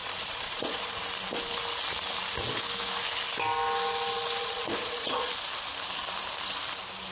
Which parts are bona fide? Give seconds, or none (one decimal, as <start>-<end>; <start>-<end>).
1.0-4.4; 5.3-7.1